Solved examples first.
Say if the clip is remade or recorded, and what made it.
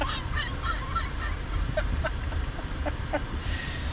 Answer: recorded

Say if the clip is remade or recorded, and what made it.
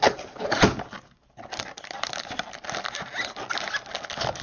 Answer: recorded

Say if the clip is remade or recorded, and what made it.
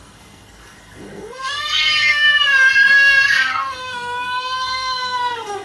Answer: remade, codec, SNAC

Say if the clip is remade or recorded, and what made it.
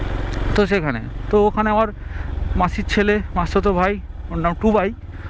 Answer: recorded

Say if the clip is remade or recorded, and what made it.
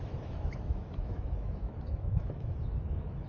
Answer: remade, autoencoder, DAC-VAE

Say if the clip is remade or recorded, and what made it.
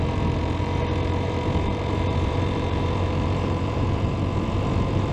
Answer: remade, vocoder, BigVGAN v2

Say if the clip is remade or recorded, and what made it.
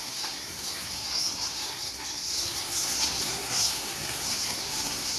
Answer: remade, codec, SNAC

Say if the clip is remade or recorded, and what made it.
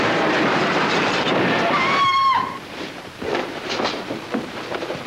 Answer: remade, vocoder, BigVGAN v2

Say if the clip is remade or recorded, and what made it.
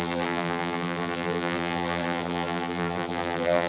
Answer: remade, vocoder, BigVGAN v2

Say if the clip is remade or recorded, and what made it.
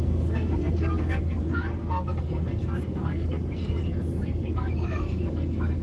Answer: remade, codec, SNAC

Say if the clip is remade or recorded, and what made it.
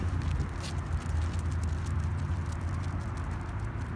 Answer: recorded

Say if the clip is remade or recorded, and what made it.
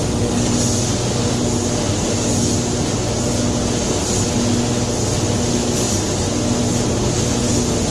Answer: recorded